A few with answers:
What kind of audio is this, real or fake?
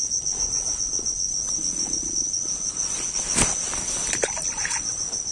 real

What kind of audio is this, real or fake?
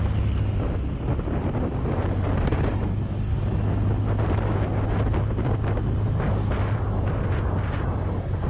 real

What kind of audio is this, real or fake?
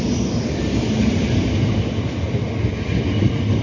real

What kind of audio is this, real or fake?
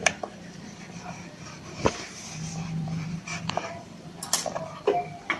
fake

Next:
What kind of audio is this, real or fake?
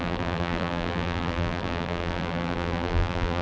fake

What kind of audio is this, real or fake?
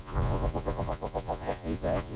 fake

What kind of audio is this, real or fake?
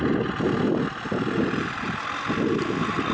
real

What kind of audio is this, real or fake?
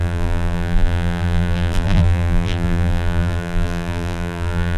fake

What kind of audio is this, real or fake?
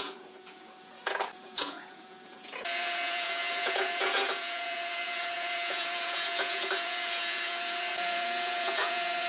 fake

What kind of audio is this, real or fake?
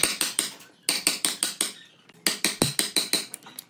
real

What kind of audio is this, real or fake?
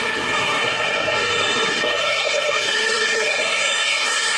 fake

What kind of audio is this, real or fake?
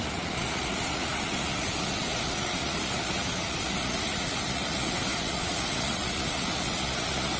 fake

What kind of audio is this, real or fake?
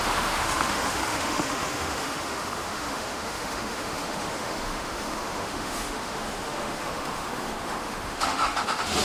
fake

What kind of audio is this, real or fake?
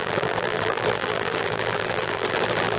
fake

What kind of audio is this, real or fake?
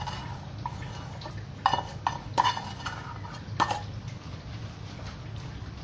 real